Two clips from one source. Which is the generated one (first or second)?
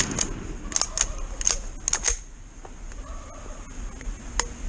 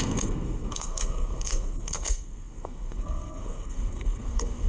second